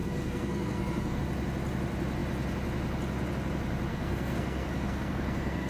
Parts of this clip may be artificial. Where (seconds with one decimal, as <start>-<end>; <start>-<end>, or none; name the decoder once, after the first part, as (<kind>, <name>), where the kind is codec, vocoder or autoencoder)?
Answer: 0.0-1.2 (codec, SNAC); 3.9-5.7